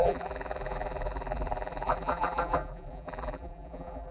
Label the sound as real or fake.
fake